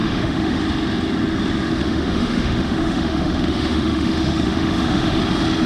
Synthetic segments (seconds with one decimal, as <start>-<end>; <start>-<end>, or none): 0.0-0.6; 1.8-5.2